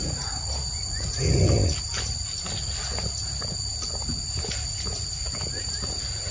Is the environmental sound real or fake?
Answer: real